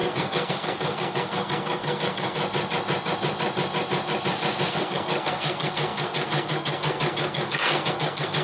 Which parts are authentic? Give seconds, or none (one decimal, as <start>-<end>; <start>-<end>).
2.4-4.7